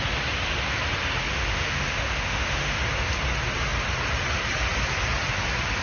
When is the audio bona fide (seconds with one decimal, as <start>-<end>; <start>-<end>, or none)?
0.0-1.3; 2.8-5.8